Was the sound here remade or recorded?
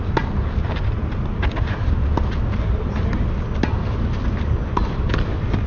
recorded